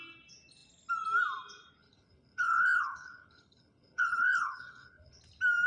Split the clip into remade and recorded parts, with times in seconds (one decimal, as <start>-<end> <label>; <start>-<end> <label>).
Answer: 0.0-1.8 recorded; 1.8-5.2 remade; 5.2-5.7 recorded